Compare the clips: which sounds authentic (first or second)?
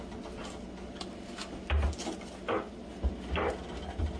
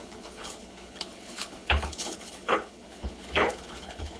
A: first